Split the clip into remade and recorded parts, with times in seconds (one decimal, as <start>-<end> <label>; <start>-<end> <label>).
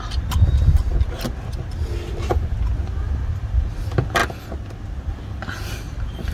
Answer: 0.0-6.3 recorded